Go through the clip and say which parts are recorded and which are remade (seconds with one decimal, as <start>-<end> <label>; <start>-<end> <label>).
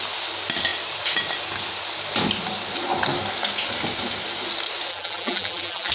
0.0-4.9 recorded; 4.9-5.9 remade